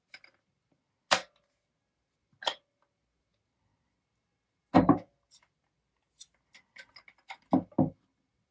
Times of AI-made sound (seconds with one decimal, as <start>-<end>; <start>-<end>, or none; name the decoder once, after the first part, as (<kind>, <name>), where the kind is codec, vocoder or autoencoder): none